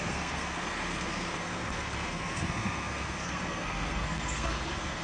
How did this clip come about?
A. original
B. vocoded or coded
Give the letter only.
B